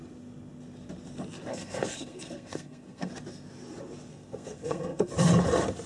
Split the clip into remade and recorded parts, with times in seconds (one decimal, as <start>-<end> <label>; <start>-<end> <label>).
0.0-1.5 recorded; 1.5-3.1 remade; 3.1-4.1 recorded; 4.1-5.1 remade; 5.1-5.9 recorded